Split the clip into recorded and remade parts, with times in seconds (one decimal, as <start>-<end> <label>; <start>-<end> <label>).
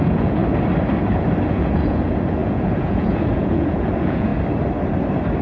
0.0-0.4 remade; 0.4-1.5 recorded; 1.5-4.3 remade; 4.3-5.4 recorded